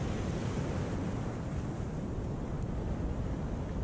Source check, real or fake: real